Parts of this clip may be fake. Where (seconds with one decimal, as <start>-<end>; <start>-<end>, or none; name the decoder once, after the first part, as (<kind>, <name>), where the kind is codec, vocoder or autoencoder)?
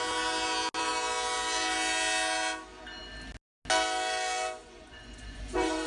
4.6-5.9 (vocoder, Vocos)